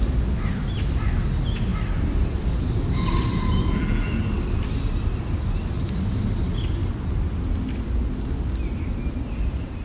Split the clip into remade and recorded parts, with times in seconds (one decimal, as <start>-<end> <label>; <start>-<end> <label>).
0.0-9.8 recorded